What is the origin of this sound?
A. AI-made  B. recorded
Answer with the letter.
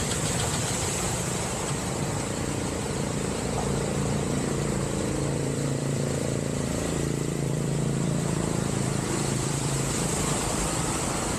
A